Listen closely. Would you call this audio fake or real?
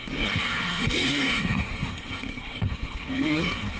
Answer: fake